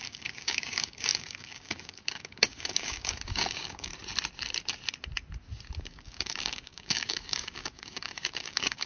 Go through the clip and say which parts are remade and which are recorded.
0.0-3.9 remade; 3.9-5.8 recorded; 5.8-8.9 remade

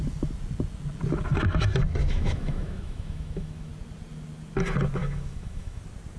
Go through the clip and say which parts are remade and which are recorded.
0.0-2.1 recorded; 2.1-3.7 remade; 3.7-5.0 recorded; 5.0-5.8 remade; 5.8-6.2 recorded